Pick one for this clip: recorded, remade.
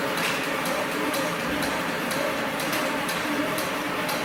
remade